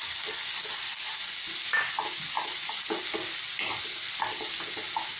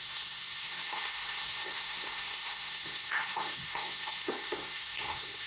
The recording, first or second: first